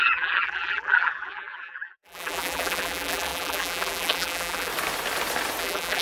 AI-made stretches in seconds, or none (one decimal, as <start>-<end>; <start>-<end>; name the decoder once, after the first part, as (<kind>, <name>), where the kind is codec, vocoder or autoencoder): 0.0-4.7 (vocoder, BigVGAN v2); 5.6-6.0